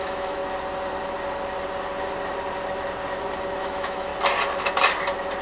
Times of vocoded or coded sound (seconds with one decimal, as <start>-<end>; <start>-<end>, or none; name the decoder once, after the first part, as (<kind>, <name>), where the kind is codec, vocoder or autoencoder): 0.0-0.4 (autoencoder, DAC-VAE); 3.6-4.1